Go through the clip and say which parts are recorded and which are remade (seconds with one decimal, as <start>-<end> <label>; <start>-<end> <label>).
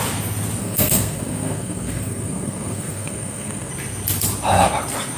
0.0-0.6 recorded; 0.6-3.7 remade; 3.7-5.2 recorded